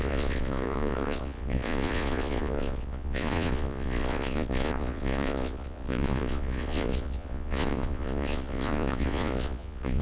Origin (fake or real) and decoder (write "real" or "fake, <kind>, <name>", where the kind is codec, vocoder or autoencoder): fake, vocoder, Vocos